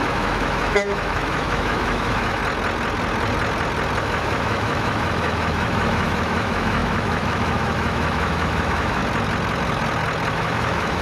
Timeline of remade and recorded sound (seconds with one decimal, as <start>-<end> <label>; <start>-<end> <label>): 0.0-2.4 remade; 2.4-4.0 recorded; 4.0-9.0 remade; 9.0-10.3 recorded; 10.3-11.0 remade